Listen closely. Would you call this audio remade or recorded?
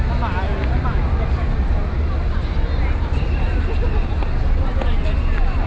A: recorded